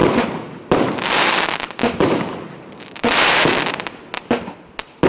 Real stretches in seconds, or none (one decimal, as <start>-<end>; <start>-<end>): 0.8-1.8; 3.7-5.1

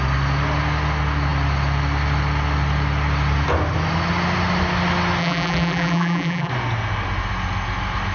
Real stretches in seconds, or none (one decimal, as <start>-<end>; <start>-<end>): 0.0-5.2; 6.5-8.1

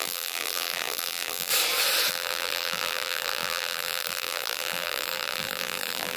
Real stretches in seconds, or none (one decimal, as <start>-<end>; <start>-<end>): 1.5-2.1